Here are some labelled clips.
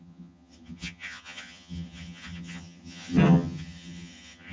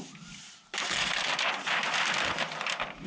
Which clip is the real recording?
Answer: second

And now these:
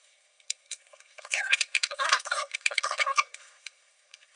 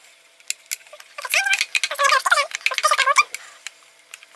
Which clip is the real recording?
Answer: second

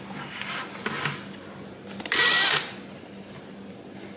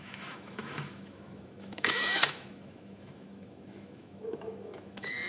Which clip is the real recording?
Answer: first